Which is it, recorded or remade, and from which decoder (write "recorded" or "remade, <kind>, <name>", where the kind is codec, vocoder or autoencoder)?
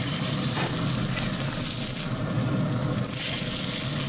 recorded